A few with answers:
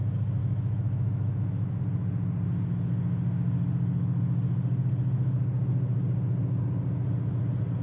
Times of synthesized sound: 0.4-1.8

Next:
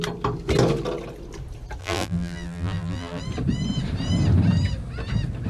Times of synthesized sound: 1.8-3.2

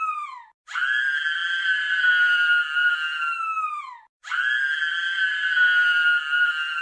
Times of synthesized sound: none

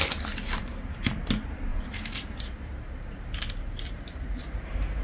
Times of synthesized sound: 0.6-1.1; 1.7-5.0

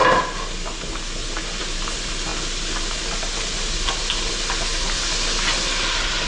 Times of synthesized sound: none